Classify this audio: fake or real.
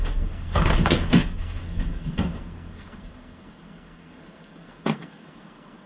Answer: fake